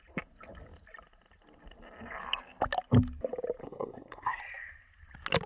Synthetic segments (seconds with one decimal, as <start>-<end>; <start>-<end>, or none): 3.6-4.4